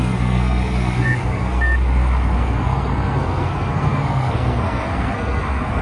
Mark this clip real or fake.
fake